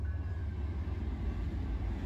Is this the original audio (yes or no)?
yes